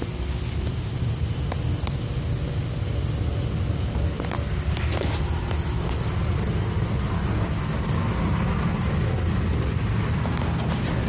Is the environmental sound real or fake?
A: real